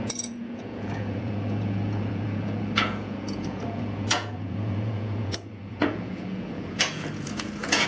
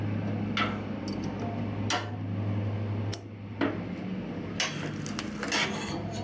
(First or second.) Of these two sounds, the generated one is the first